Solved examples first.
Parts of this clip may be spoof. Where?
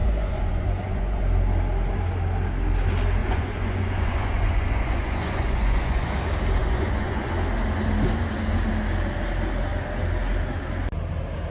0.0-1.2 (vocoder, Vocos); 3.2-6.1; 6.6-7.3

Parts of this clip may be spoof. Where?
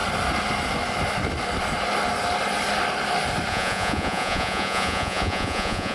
3.5-5.9 (vocoder, Vocos)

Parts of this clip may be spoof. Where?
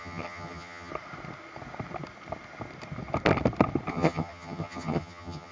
0.0-0.9 (vocoder, HiFi-GAN); 3.9-5.5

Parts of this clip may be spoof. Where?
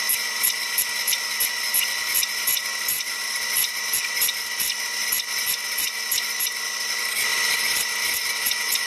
none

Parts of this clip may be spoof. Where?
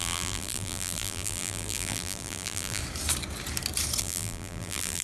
0.0-2.8 (vocoder, BigVGAN v2); 4.0-5.0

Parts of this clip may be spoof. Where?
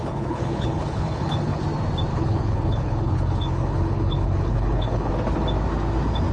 0.0-1.6 (codec, HILCodec); 2.1-5.1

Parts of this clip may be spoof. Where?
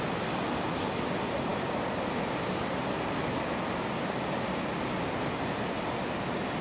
none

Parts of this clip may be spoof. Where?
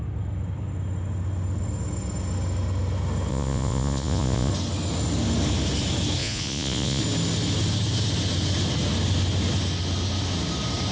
3.3-4.5 (vocoder, Vocos); 6.2-7.0